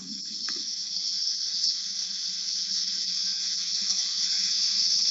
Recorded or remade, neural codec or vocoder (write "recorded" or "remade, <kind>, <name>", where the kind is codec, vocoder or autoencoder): remade, codec, SNAC